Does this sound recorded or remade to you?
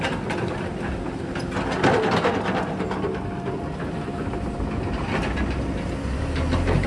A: recorded